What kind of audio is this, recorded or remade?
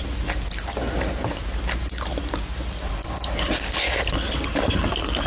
recorded